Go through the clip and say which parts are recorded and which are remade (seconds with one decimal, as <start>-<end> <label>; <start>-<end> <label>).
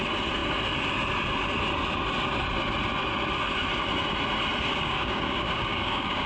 0.0-4.7 recorded; 4.7-6.3 remade